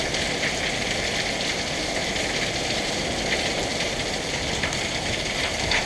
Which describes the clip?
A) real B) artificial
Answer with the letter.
A